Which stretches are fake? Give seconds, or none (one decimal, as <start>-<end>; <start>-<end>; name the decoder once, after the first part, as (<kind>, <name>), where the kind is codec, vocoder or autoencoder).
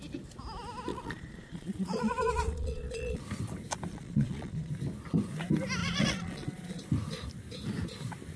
0.9-3.2 (vocoder, Vocos); 3.9-4.7; 5.8-6.8